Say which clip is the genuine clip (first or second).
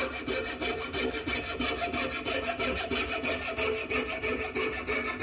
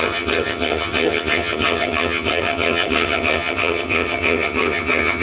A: first